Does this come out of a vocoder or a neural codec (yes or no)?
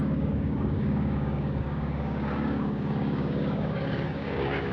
yes